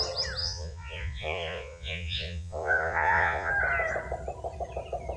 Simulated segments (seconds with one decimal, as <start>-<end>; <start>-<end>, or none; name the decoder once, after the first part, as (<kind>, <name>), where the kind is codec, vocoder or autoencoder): 0.4-3.5 (vocoder, Vocos)